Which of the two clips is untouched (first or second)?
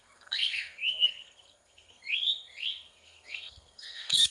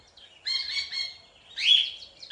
second